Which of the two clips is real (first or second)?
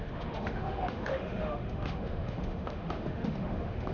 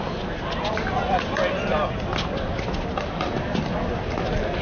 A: second